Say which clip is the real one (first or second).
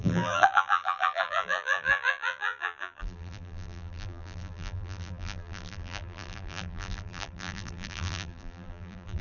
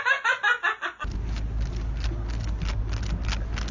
second